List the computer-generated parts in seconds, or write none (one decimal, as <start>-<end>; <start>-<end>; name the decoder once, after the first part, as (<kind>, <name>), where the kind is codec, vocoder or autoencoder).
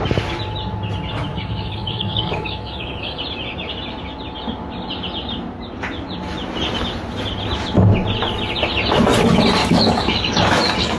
1.3-3.2 (codec, DAC); 9.6-11.0